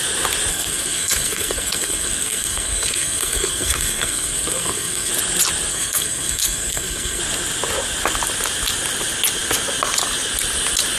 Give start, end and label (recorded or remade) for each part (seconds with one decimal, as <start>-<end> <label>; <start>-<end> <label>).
0.0-0.5 recorded; 0.5-5.1 remade; 5.1-5.7 recorded; 5.7-7.2 remade; 7.2-11.0 recorded